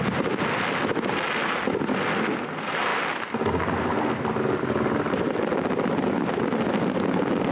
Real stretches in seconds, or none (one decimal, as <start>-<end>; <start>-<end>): 0.0-7.5